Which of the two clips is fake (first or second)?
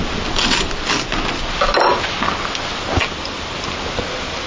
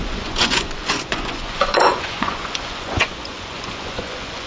second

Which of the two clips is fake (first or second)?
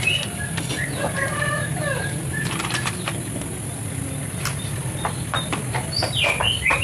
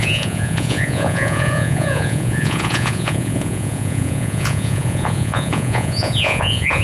second